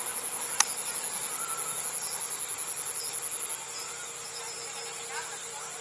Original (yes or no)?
yes